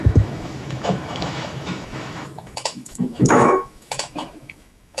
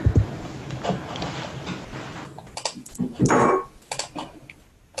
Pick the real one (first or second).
second